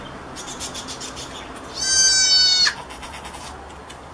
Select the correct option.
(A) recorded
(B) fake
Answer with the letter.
A